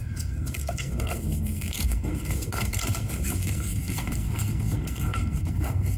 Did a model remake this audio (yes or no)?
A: yes